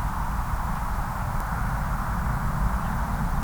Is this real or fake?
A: real